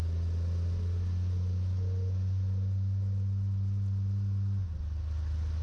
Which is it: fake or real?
real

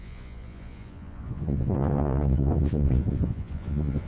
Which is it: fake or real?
fake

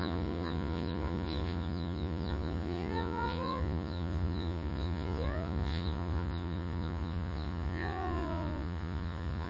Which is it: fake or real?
fake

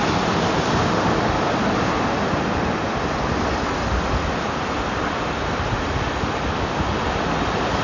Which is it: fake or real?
real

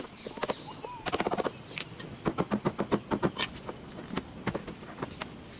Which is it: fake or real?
real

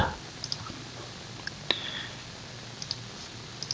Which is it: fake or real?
real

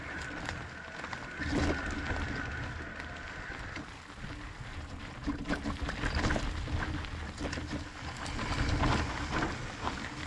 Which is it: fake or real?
real